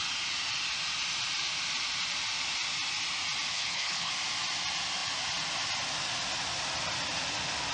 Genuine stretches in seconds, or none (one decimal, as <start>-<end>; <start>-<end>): 0.0-3.5; 4.1-7.7

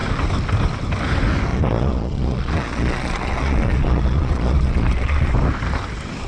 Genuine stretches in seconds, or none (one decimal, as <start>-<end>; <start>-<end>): 0.0-1.5; 5.3-6.3

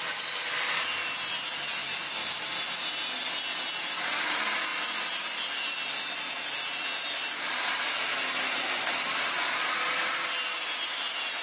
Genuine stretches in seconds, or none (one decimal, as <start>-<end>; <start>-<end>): 0.0-11.4

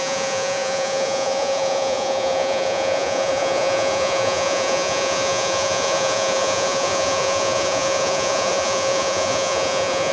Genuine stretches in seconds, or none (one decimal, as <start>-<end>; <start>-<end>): none

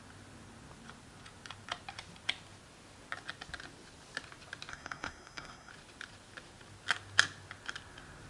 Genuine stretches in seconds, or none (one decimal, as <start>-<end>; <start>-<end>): 0.0-4.7; 5.7-8.3